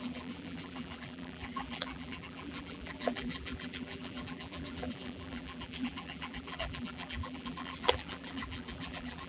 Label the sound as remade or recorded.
remade